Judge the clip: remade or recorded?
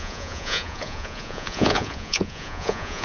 remade